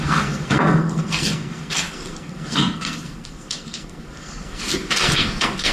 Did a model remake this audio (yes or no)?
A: yes